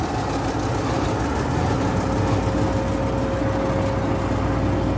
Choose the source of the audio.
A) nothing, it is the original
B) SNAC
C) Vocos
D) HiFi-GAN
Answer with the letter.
A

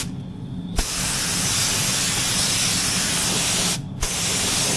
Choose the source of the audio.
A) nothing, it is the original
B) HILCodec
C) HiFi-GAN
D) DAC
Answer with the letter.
A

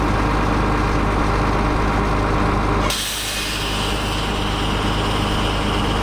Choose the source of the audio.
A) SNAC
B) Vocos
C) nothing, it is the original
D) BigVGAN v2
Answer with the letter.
C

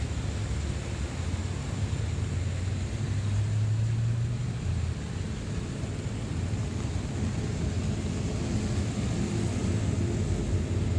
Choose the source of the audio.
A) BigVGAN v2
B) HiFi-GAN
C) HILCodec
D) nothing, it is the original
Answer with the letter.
D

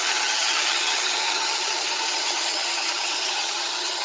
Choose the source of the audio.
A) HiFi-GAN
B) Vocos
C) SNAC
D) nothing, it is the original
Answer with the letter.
A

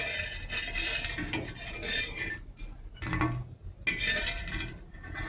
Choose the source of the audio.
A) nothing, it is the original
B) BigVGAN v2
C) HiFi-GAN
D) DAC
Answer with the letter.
A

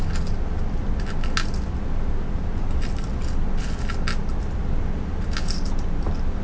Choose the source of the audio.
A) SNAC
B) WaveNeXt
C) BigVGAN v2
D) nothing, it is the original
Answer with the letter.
D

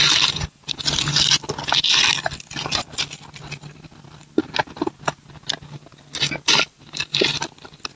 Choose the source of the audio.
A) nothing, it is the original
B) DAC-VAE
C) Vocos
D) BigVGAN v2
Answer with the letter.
A